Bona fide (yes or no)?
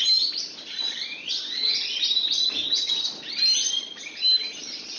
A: yes